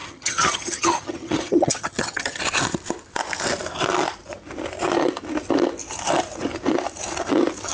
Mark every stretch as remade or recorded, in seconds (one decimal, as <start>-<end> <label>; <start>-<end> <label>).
0.0-2.4 remade; 2.4-7.7 recorded